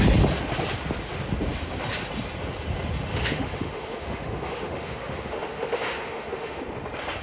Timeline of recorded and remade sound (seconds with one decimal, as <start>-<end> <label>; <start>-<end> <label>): 0.0-3.1 recorded; 3.1-6.6 remade; 6.6-7.2 recorded